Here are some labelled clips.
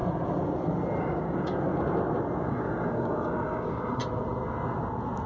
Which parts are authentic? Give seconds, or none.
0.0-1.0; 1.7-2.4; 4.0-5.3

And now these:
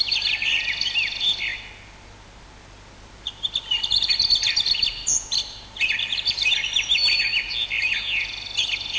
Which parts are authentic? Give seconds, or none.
0.0-9.0

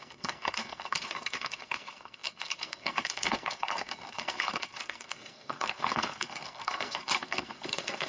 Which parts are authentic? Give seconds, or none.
none

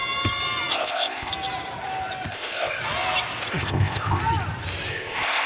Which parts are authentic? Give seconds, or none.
0.0-0.7; 1.3-2.3; 2.8-3.5; 4.2-4.9

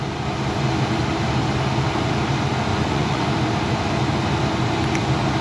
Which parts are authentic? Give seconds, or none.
0.0-2.7; 3.3-5.4

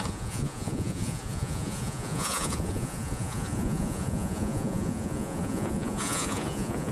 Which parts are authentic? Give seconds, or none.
none

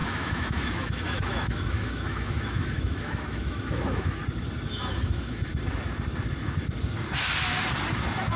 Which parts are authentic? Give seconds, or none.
4.2-4.7; 5.5-8.4

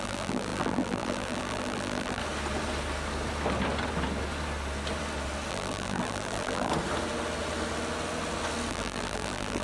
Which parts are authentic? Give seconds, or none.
2.2-5.5; 6.7-8.7